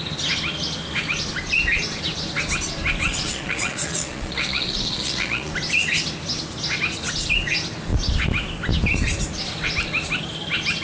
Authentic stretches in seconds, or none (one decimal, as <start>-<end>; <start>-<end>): 0.0-3.0; 5.5-10.8